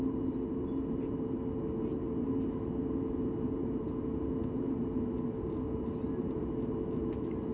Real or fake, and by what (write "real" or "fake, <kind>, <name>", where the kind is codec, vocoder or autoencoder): real